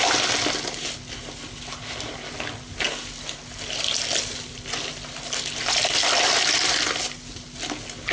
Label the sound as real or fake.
real